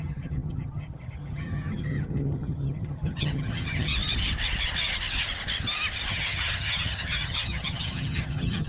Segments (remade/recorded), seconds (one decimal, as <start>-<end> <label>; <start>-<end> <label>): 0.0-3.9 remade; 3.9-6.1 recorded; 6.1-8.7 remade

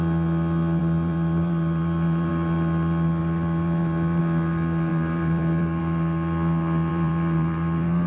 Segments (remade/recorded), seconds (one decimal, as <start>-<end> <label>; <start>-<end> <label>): 0.0-0.8 recorded; 0.8-2.3 remade; 2.3-3.2 recorded; 3.2-4.2 remade; 4.2-4.9 recorded; 4.9-5.8 remade; 5.8-6.9 recorded; 6.9-8.1 remade

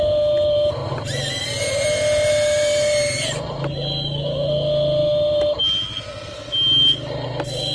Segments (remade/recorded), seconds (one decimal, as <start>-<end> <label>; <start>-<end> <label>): 0.0-7.7 recorded

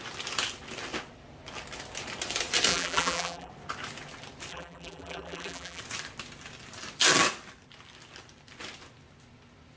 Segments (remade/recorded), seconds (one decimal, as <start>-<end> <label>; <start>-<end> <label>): 0.0-2.7 recorded; 2.7-3.5 remade; 3.5-4.5 recorded; 4.5-5.8 remade; 5.8-9.8 recorded